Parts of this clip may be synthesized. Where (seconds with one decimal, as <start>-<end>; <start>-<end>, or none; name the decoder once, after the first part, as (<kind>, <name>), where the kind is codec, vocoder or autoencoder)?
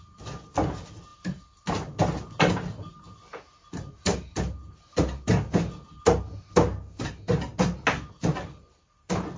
none